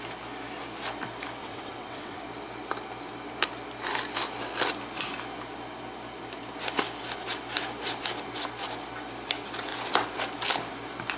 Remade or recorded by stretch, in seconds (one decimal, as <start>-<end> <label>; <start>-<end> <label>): 0.0-1.4 recorded; 1.4-2.2 remade; 2.2-11.2 recorded